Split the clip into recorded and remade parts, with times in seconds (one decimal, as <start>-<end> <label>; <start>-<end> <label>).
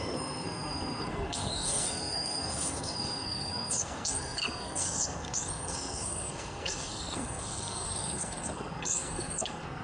0.0-9.8 remade